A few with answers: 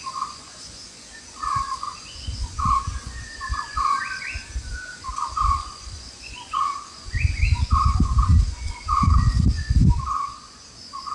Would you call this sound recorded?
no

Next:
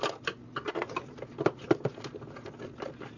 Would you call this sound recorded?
yes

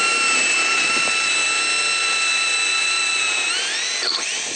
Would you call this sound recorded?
yes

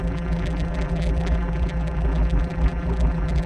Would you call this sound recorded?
no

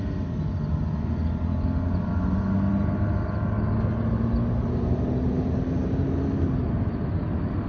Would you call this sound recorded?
yes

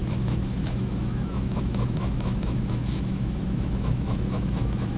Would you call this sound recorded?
no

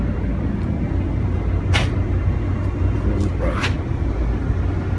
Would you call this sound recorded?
yes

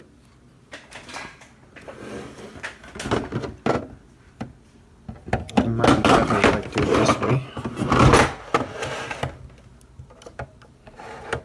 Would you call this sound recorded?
yes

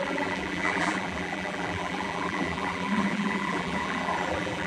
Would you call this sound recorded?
no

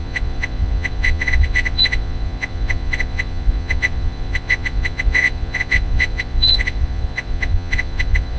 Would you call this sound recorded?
no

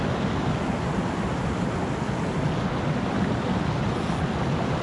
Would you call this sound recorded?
yes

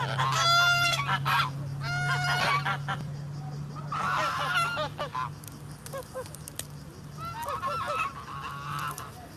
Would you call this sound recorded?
yes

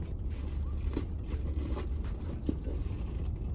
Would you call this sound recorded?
yes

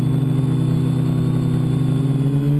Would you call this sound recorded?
yes